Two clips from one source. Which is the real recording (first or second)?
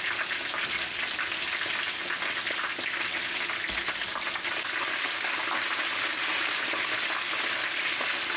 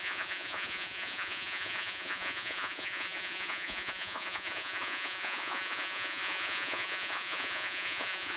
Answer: first